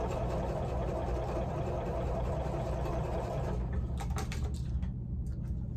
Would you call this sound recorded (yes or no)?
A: yes